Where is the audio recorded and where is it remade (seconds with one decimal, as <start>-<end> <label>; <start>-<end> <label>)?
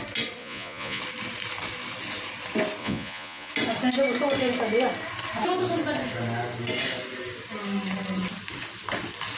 0.0-0.4 recorded; 0.4-1.0 remade; 1.0-2.8 recorded; 2.8-3.5 remade; 3.5-9.4 recorded